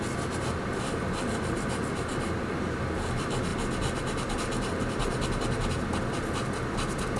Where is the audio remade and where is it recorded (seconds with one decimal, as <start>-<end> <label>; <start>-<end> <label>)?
0.0-7.2 recorded